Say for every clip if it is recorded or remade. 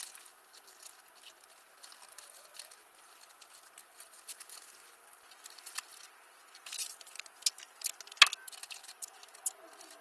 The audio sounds recorded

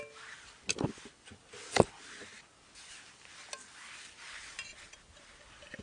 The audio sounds recorded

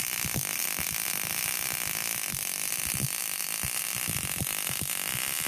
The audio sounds recorded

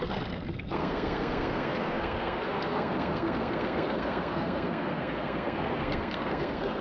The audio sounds remade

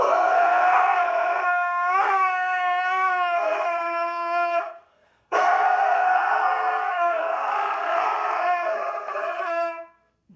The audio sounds remade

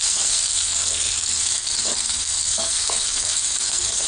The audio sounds remade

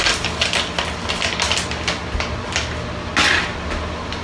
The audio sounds recorded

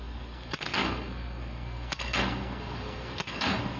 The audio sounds remade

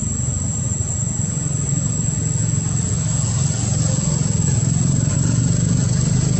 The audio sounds recorded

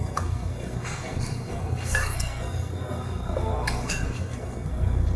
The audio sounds remade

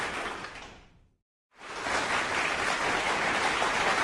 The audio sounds recorded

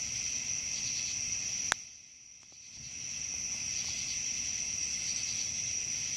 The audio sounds recorded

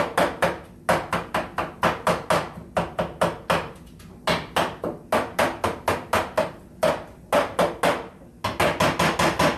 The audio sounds recorded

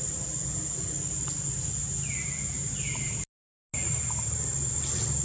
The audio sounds recorded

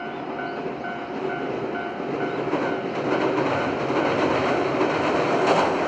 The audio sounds recorded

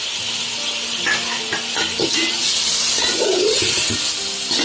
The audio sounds recorded